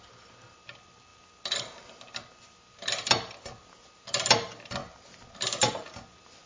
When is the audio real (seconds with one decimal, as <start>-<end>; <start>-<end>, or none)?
0.0-6.5